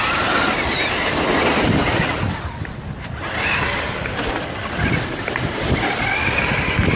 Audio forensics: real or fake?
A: real